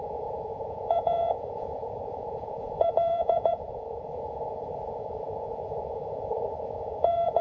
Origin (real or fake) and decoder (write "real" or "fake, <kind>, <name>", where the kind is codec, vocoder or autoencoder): fake, vocoder, Vocos